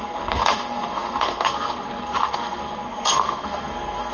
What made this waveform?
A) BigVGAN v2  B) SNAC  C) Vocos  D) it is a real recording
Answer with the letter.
B